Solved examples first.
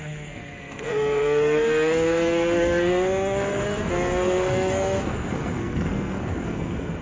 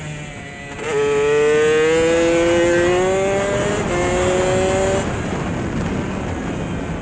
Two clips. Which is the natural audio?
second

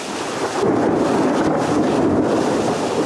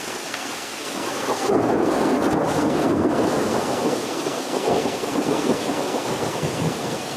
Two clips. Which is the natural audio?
first